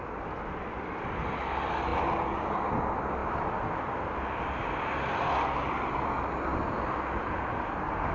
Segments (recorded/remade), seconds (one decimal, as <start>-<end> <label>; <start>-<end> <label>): 0.0-8.1 recorded